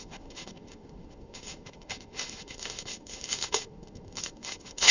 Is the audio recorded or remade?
remade